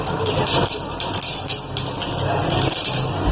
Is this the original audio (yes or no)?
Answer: yes